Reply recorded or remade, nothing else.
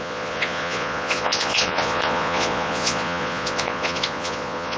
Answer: remade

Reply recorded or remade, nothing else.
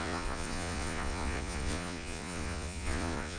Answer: remade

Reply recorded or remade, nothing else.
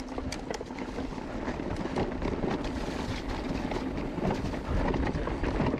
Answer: recorded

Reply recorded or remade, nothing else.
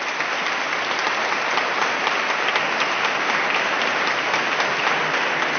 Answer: recorded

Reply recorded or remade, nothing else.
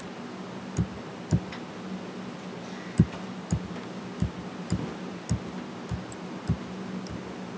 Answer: recorded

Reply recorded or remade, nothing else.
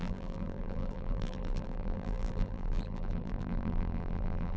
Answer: remade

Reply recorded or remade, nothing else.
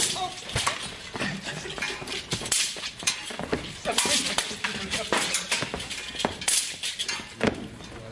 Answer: recorded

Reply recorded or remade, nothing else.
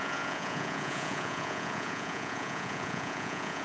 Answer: remade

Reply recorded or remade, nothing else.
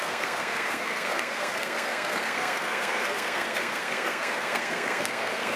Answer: remade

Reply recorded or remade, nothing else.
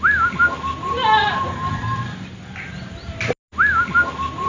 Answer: recorded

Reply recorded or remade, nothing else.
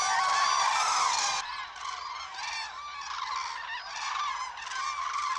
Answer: recorded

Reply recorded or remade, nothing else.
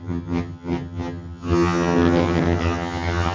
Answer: remade